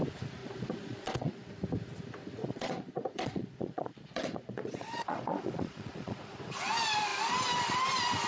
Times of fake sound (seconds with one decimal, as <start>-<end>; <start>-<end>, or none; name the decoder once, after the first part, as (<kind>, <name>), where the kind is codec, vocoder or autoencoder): 0.4-1.5 (vocoder, Vocos); 2.4-6.4